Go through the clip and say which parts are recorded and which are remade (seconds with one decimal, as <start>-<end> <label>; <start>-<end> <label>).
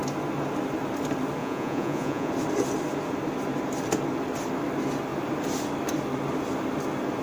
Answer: 0.0-1.4 recorded; 1.4-2.3 remade; 2.3-7.2 recorded